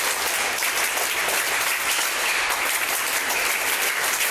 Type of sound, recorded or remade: remade